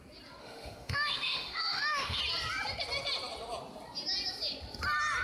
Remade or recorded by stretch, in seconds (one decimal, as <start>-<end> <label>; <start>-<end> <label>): 0.0-0.4 recorded; 0.4-2.2 remade; 2.2-5.2 recorded